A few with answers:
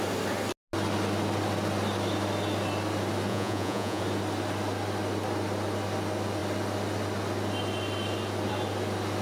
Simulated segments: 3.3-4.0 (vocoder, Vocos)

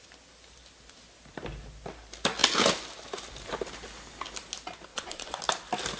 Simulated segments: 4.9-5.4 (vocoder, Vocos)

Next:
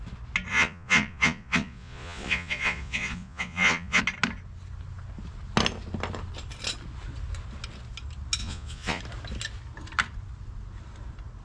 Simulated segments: 0.5-4.0 (vocoder, Vocos); 8.4-9.0

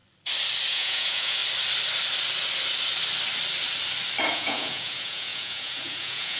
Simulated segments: 0.7-1.4 (vocoder, Vocos); 4.3-6.4

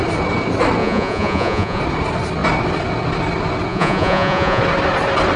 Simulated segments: 0.8-1.8 (vocoder, Vocos); 3.7-4.6